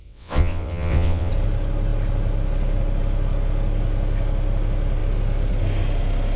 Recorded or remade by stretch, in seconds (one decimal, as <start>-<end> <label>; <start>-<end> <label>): 0.0-1.3 remade; 1.3-6.4 recorded